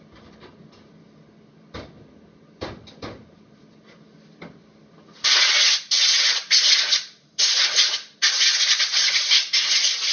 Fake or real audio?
real